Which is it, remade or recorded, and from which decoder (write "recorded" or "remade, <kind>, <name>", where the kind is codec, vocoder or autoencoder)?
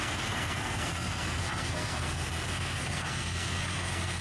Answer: remade, codec, SNAC